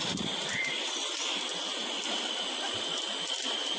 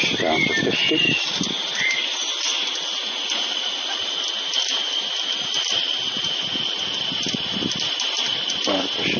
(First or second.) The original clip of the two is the second